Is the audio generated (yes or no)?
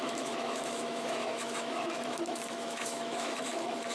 yes